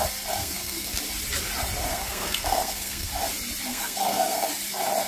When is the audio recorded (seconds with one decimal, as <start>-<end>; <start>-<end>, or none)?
0.0-0.4; 1.0-1.9; 3.1-3.7; 4.5-5.1